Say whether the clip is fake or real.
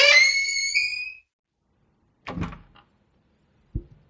real